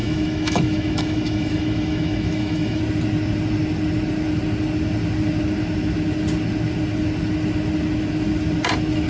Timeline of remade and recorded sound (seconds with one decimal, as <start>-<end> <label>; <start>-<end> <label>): 0.0-2.8 remade; 2.8-9.1 recorded